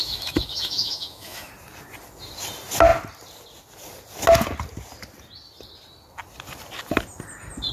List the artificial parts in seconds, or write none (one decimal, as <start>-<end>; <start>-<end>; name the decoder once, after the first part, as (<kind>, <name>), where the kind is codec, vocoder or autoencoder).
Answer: 0.0-1.5 (autoencoder, DAC-VAE)